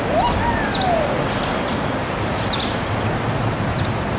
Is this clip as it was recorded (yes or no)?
yes